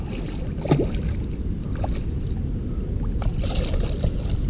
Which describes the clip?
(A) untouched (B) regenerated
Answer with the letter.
A